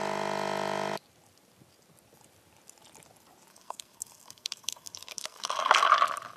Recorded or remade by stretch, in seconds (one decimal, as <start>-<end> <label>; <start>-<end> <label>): 0.0-3.5 recorded; 3.5-5.9 remade; 5.9-6.4 recorded